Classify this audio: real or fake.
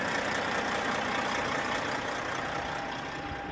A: real